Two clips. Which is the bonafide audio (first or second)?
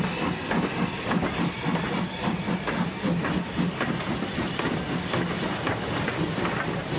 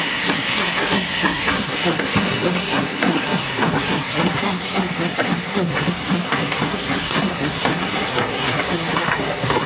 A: first